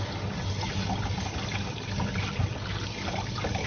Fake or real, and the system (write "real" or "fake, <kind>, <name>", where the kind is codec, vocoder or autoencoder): real